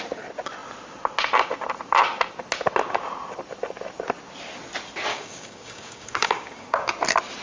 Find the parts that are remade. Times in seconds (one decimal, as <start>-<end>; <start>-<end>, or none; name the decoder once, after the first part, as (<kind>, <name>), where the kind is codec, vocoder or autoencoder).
5.1-6.9 (codec, DAC)